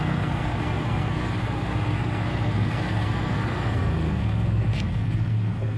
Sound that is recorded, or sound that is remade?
remade